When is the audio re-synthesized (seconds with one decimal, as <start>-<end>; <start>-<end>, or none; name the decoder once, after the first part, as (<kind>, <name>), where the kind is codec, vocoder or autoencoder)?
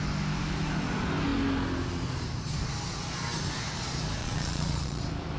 4.2-5.0 (vocoder, Vocos)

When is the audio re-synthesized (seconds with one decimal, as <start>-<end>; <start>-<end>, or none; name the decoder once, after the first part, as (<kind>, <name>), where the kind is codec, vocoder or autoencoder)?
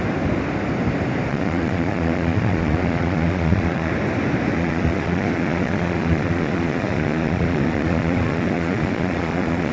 1.3-3.9 (vocoder, Vocos); 4.5-9.7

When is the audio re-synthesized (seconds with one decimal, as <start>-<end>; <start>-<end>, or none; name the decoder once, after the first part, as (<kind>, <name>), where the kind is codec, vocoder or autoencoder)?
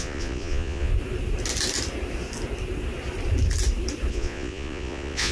0.0-0.9 (vocoder, Vocos); 4.1-5.3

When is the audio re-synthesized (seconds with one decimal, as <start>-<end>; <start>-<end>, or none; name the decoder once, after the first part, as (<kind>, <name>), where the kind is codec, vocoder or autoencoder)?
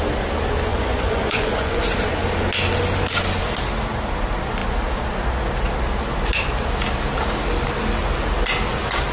0.7-1.8 (vocoder, Vocos)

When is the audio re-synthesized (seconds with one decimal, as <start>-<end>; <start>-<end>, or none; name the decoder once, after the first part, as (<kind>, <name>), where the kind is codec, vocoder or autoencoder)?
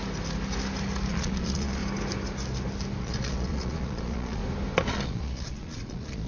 1.1-1.8 (vocoder, Vocos); 3.0-4.4; 4.9-6.3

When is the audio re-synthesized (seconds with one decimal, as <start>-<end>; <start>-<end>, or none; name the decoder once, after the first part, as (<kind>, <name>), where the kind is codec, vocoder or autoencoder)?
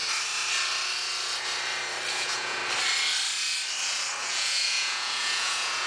2.1-2.6 (vocoder, Vocos); 4.2-5.9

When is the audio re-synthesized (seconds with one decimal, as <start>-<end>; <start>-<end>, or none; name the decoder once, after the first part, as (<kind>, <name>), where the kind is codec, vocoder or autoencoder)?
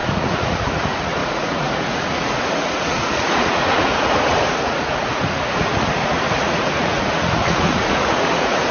0.0-8.7 (vocoder, Vocos)